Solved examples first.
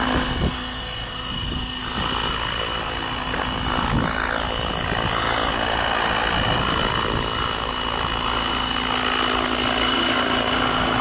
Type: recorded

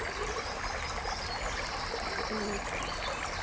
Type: recorded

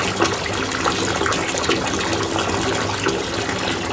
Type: recorded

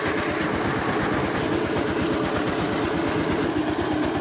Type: recorded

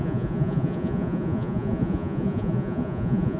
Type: remade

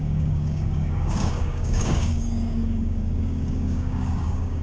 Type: remade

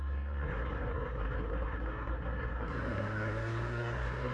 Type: remade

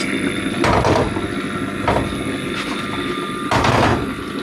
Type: recorded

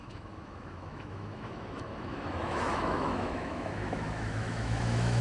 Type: remade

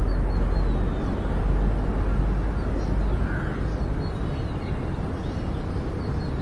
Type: recorded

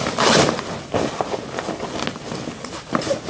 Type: recorded